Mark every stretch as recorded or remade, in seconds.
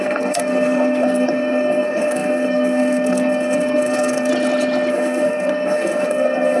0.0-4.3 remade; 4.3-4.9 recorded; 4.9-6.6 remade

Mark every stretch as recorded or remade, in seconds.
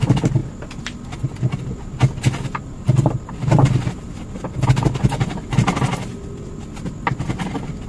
0.0-7.9 recorded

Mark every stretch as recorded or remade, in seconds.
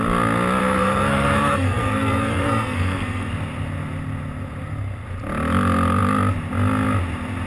0.0-0.6 recorded; 0.6-3.3 remade; 3.3-7.5 recorded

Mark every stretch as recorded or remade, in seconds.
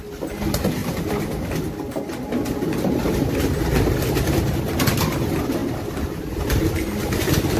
0.0-7.6 recorded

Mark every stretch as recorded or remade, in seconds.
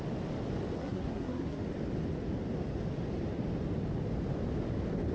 0.0-0.8 recorded; 0.8-1.6 remade; 1.6-5.1 recorded